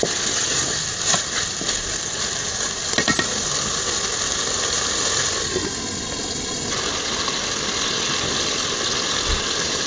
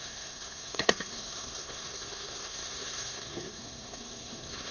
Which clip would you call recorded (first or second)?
first